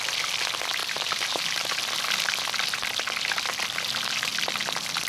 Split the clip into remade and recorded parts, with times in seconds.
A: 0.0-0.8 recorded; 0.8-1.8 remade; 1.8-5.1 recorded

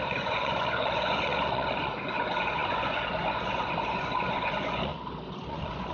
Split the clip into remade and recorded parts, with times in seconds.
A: 0.0-4.9 remade; 4.9-5.5 recorded; 5.5-5.9 remade

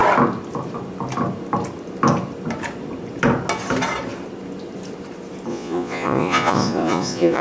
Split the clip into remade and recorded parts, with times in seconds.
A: 0.0-5.5 recorded; 5.5-7.4 remade

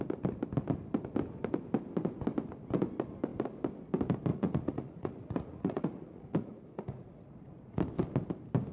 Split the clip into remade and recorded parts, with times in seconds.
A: 0.0-4.3 recorded; 4.3-7.8 remade; 7.8-8.7 recorded

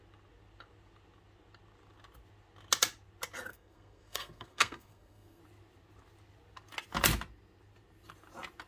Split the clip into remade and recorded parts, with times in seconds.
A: 0.0-3.5 recorded; 3.5-5.4 remade; 5.4-8.7 recorded

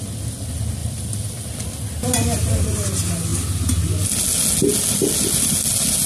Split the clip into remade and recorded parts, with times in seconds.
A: 0.0-0.8 recorded; 0.8-2.6 remade; 2.6-6.1 recorded

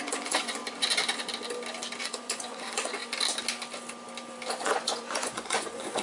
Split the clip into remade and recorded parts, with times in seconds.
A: 0.0-0.6 remade; 0.6-2.0 recorded; 2.0-3.0 remade; 3.0-4.6 recorded; 4.6-6.0 remade

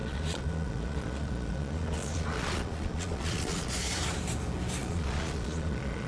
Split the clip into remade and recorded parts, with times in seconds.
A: 0.0-3.7 remade; 3.7-4.8 recorded; 4.8-6.1 remade